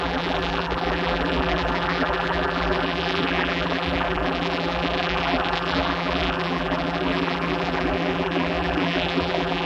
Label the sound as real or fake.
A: fake